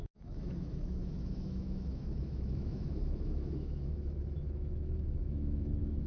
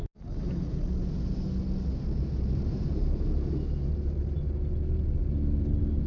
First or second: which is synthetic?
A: first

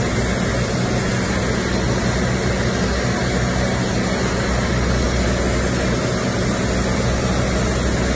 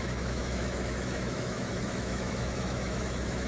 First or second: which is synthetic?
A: second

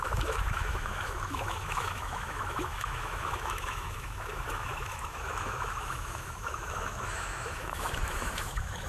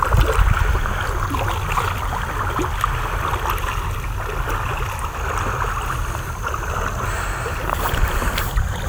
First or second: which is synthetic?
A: first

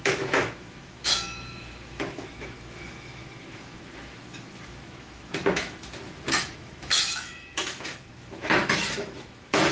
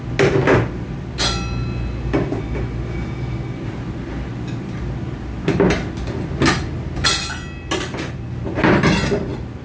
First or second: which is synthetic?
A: first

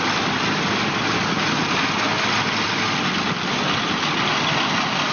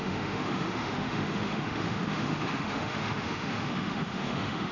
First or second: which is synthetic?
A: second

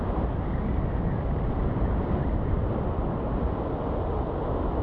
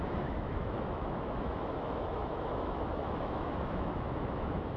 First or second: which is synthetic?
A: second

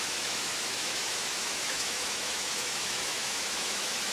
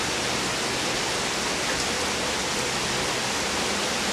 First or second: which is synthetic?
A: first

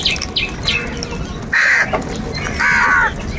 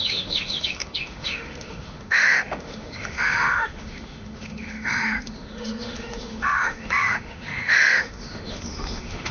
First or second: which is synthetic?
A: second